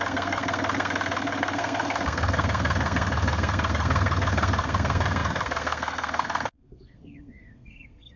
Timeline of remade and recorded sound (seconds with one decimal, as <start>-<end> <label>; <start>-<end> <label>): 0.0-8.2 remade